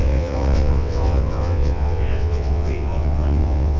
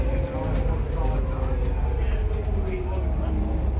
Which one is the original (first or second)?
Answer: second